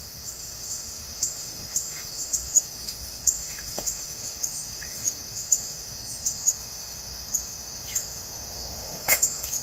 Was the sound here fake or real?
fake